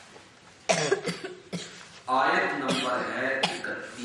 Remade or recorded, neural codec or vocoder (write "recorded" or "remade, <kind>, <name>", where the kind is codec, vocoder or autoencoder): recorded